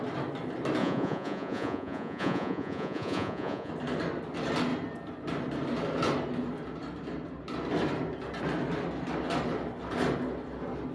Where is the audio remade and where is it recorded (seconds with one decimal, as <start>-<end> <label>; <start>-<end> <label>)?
0.0-0.8 recorded; 0.8-3.7 remade; 3.7-10.9 recorded